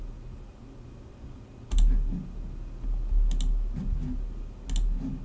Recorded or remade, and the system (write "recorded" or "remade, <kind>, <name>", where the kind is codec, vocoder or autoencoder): recorded